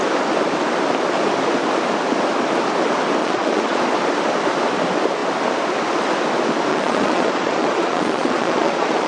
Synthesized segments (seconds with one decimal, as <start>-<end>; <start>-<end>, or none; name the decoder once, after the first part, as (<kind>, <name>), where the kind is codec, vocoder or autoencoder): 3.2-3.8 (vocoder, Vocos); 6.7-9.1